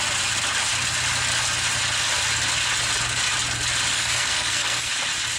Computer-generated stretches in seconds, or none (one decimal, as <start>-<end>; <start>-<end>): 3.9-4.9